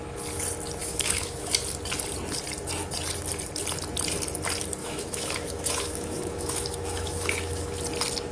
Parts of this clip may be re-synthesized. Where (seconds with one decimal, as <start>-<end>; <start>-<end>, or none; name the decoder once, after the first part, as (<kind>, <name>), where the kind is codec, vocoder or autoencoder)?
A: 0.8-1.5 (autoencoder, DAC-VAE); 4.8-7.8